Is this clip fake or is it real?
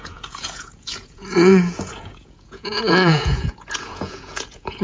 fake